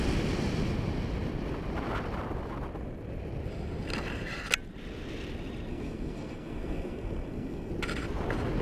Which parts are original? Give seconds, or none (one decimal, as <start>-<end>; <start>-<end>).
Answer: 0.0-5.7; 7.7-8.6